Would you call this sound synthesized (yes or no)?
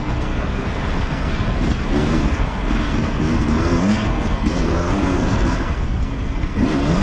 yes